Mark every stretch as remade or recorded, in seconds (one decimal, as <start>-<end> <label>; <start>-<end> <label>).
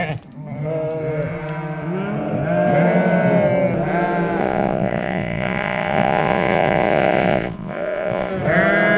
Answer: 0.0-4.4 recorded; 4.4-8.3 remade; 8.3-9.0 recorded